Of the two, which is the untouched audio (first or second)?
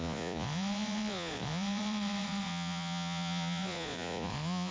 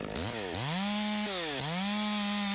second